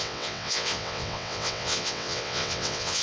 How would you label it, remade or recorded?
remade